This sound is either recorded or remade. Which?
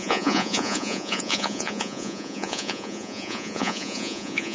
remade